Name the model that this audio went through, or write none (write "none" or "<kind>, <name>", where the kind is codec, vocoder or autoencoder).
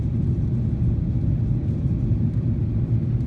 none